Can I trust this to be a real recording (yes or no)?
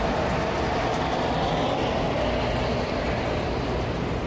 yes